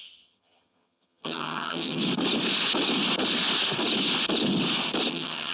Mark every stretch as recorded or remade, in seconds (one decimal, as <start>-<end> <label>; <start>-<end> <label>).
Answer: 0.0-2.0 remade; 2.0-5.1 recorded; 5.1-5.5 remade